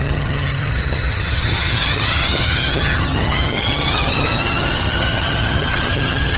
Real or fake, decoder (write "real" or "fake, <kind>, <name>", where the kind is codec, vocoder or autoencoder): fake, vocoder, HiFi-GAN